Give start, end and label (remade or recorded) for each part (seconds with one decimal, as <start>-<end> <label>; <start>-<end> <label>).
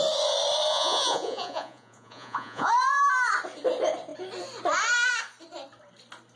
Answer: 0.0-0.7 recorded; 0.7-2.7 remade; 2.7-6.4 recorded